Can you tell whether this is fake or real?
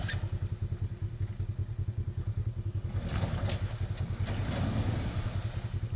real